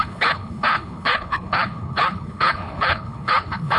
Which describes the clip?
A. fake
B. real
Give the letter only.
A